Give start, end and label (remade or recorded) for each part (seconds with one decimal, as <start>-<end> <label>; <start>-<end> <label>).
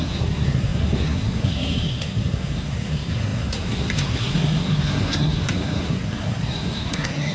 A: 0.0-7.3 remade